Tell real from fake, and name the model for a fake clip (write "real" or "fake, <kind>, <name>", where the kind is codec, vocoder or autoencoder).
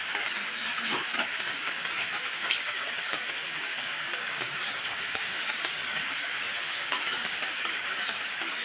fake, codec, DAC